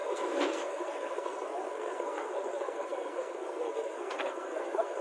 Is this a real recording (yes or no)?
no